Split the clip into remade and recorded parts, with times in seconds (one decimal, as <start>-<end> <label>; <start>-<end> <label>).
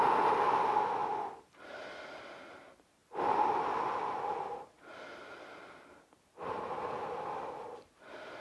0.0-1.0 remade; 1.0-1.6 recorded; 1.6-3.0 remade; 3.0-6.5 recorded; 6.5-8.4 remade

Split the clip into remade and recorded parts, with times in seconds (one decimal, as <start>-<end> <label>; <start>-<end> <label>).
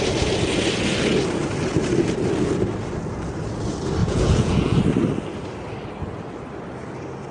0.0-4.0 recorded; 4.0-4.8 remade; 4.8-7.3 recorded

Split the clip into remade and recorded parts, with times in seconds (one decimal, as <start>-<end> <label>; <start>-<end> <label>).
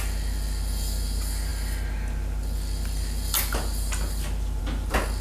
0.0-5.2 recorded